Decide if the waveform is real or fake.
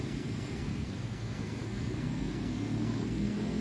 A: fake